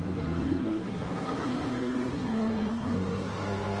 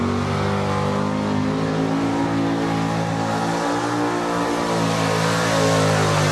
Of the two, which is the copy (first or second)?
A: first